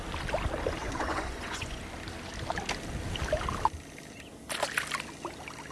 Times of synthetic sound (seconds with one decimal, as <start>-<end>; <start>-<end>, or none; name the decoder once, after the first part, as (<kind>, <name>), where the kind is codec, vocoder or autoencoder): 0.8-1.8 (vocoder, Vocos)